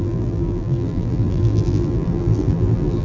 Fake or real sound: fake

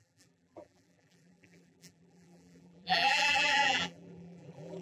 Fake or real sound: fake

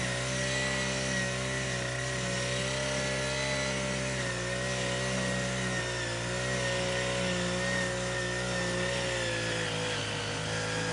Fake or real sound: real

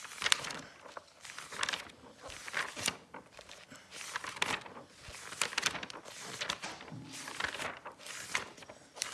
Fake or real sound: fake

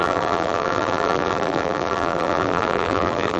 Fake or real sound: fake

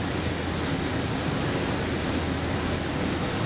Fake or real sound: real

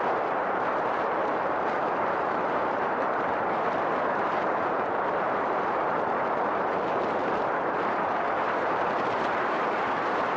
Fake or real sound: fake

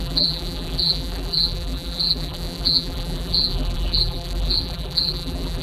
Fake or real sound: fake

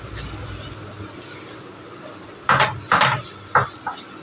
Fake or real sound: real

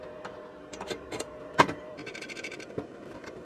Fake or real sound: fake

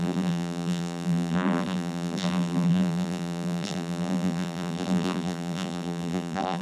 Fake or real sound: fake